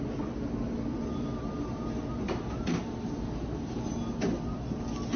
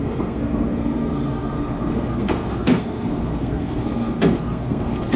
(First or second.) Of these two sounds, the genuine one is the first